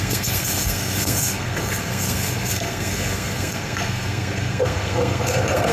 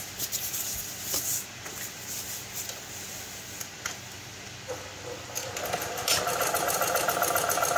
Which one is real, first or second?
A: second